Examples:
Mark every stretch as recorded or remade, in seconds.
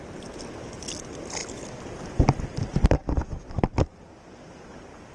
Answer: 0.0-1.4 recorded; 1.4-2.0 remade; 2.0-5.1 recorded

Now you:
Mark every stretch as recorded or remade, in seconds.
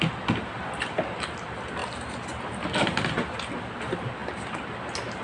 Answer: 0.0-5.2 recorded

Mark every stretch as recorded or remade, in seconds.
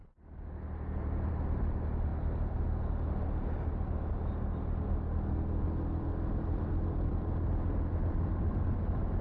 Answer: 0.0-9.2 recorded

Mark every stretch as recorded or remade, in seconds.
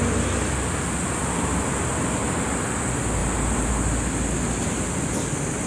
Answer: 0.0-3.2 recorded; 3.2-3.7 remade; 3.7-5.7 recorded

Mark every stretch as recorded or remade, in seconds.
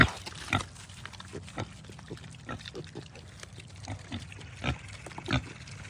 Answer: 0.0-5.9 recorded